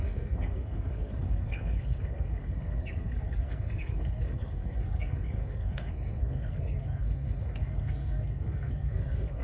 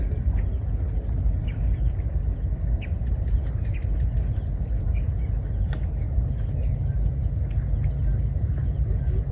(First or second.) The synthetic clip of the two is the first